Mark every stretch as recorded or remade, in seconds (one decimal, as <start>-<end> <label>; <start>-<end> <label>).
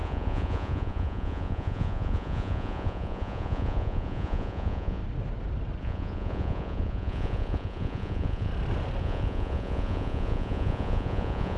0.0-5.0 remade; 5.0-5.8 recorded; 5.8-8.5 remade; 8.5-9.0 recorded; 9.0-11.6 remade